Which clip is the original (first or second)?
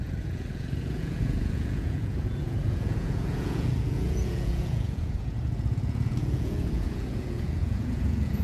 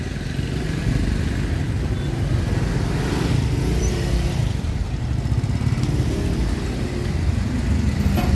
second